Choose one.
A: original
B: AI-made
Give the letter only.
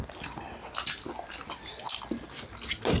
A